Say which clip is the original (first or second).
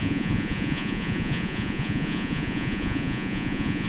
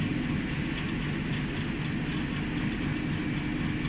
second